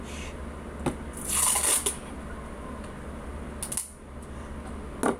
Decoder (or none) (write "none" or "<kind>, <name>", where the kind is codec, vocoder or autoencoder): none